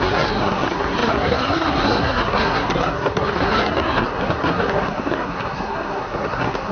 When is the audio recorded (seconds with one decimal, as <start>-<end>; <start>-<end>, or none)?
none